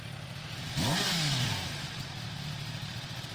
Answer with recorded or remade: recorded